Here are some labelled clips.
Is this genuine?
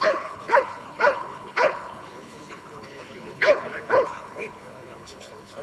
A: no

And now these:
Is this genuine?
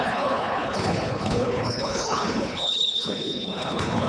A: no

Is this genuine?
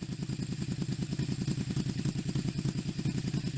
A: yes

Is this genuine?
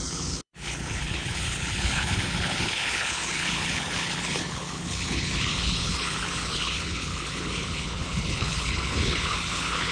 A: no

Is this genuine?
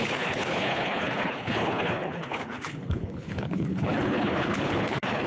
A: no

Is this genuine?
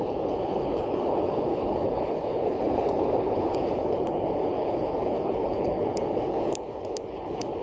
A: no